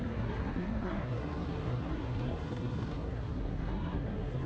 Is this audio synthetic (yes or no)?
yes